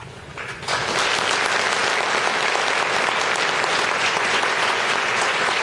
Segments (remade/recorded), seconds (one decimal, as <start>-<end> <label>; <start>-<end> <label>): 0.0-0.8 remade; 0.8-3.7 recorded; 3.7-5.6 remade

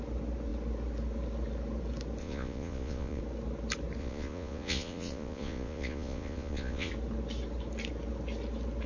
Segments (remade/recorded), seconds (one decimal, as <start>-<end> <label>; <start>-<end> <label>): 0.0-2.2 recorded; 2.2-3.2 remade; 3.2-4.0 recorded; 4.0-6.9 remade; 6.9-8.9 recorded

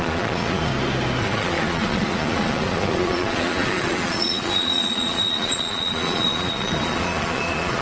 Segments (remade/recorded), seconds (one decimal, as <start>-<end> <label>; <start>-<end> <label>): 0.0-0.7 remade; 0.7-1.2 recorded; 1.2-7.8 remade